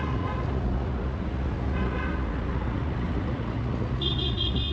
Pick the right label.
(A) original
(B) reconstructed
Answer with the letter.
B